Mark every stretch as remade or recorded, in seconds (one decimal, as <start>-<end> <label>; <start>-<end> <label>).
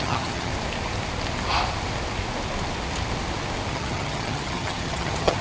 0.0-0.5 remade; 0.5-3.7 recorded; 3.7-5.4 remade